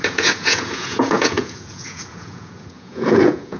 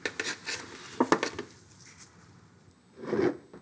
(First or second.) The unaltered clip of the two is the second